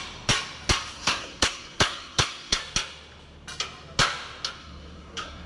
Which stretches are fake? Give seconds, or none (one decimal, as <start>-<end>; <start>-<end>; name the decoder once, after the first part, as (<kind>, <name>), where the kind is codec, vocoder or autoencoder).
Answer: 0.9-2.6 (codec, SNAC); 4.6-5.5